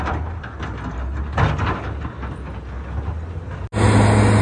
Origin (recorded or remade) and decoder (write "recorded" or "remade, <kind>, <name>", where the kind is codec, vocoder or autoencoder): recorded